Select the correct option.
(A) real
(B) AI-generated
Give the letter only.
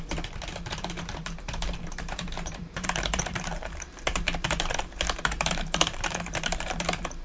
B